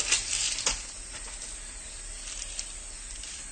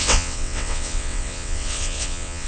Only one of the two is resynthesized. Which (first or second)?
second